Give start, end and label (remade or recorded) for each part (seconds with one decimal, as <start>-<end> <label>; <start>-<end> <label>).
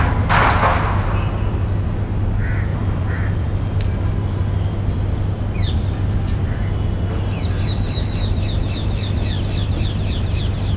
0.0-2.7 recorded; 2.7-3.2 remade; 3.2-10.8 recorded